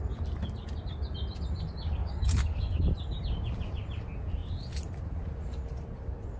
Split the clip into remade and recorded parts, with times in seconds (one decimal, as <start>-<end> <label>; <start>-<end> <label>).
0.0-2.0 recorded; 2.0-2.8 remade; 2.8-6.4 recorded